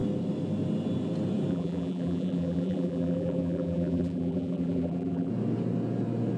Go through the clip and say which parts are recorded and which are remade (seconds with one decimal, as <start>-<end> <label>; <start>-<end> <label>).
0.0-1.5 recorded; 1.5-5.3 remade; 5.3-6.4 recorded